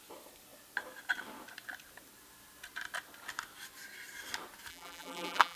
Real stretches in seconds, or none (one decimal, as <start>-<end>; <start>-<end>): 0.0-4.7